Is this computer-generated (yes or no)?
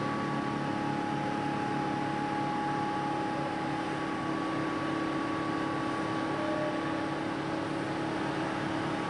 no